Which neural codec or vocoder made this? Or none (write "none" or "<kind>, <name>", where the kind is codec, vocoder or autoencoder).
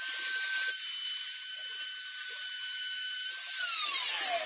none